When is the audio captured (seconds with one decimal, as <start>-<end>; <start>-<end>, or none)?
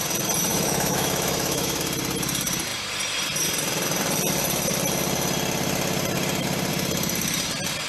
0.0-0.5; 1.8-7.9